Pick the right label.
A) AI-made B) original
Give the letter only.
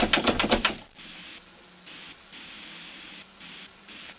B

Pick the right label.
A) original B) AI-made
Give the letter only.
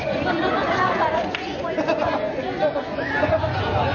B